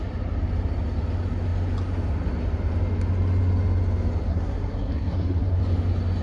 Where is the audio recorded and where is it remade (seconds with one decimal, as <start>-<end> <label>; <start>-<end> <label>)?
0.0-4.3 recorded; 4.3-5.6 remade; 5.6-6.2 recorded